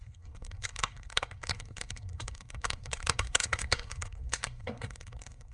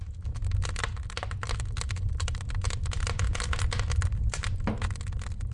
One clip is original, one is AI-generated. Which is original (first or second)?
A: second